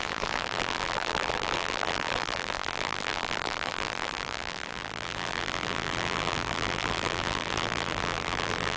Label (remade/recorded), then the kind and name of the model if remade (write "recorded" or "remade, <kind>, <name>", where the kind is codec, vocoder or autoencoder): remade, vocoder, BigVGAN v2